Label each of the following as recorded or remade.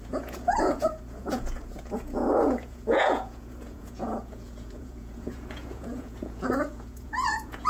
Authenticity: remade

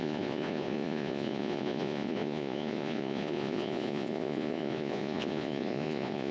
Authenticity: remade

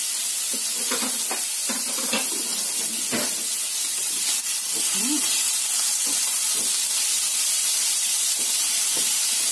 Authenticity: recorded